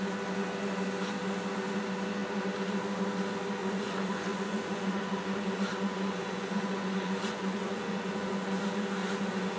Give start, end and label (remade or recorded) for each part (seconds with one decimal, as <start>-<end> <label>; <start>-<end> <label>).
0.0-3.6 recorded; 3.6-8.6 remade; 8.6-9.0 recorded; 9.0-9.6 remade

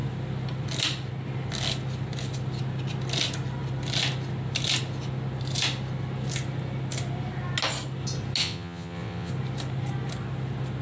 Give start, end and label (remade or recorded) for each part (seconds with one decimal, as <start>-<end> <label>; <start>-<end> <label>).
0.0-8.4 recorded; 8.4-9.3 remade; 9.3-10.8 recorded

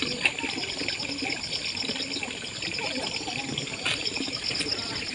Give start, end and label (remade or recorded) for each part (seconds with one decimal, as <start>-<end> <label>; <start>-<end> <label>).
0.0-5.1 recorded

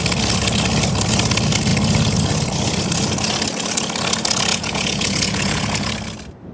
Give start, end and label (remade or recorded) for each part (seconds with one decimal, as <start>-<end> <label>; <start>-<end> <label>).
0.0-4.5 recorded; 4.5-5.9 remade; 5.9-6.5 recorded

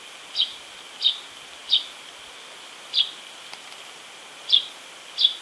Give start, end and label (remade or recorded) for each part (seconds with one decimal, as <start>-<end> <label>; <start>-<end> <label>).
0.0-0.5 recorded; 0.5-3.7 remade; 3.7-5.4 recorded

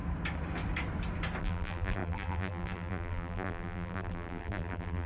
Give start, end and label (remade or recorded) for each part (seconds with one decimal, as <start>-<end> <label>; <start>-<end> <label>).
0.0-1.4 recorded; 1.4-5.1 remade